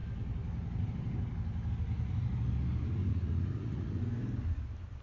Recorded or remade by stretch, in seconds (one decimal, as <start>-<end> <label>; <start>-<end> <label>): 0.0-3.1 recorded; 3.1-4.0 remade; 4.0-5.0 recorded